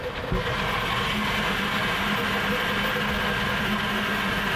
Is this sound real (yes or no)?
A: yes